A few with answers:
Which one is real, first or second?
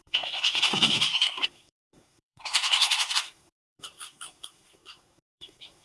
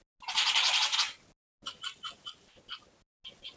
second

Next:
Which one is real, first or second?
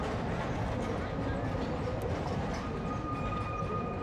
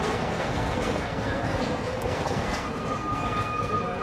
first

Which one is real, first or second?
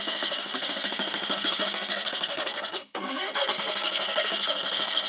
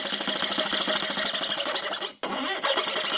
second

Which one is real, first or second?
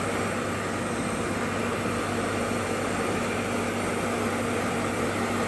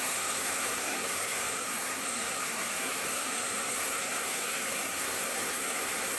first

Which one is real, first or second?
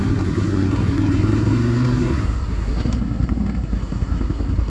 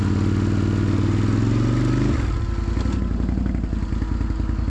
second